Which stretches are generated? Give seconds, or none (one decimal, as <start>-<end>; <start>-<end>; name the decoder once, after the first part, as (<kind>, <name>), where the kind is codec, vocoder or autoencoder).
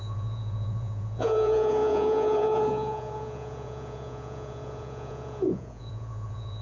0.0-6.6 (vocoder, Vocos)